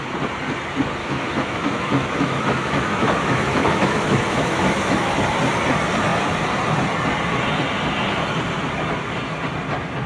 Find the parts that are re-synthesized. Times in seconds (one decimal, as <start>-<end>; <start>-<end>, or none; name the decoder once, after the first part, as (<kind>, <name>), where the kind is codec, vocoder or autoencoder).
1.0-5.2 (autoencoder, DAC-VAE)